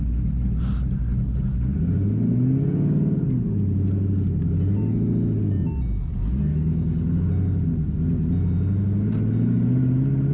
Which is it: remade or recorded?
recorded